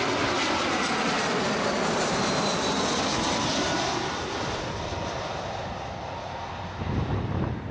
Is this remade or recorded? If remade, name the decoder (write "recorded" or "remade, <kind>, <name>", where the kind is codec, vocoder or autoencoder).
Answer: recorded